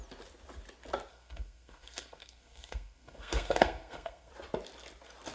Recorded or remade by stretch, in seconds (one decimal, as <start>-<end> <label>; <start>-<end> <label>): 0.0-1.1 recorded; 1.1-4.3 remade; 4.3-5.3 recorded